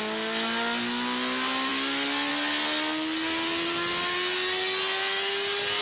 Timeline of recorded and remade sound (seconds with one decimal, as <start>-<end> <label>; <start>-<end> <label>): 0.0-5.8 recorded